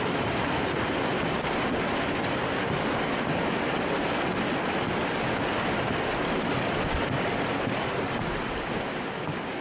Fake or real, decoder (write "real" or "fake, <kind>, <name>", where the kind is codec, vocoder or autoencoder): real